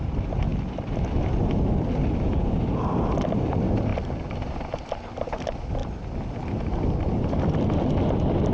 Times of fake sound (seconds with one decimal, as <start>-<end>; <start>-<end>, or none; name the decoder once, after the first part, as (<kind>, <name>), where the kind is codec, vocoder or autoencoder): 0.0-0.5 (vocoder, BigVGAN v2); 2.0-5.8; 6.5-8.5